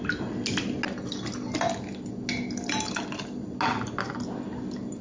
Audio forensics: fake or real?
real